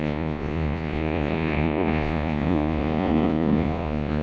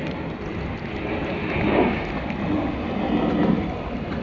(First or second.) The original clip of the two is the second